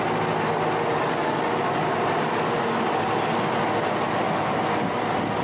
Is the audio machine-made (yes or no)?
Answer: no